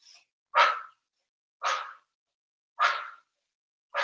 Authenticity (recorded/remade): recorded